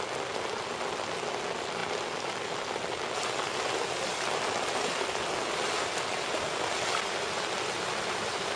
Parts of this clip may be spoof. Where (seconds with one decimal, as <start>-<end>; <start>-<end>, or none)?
none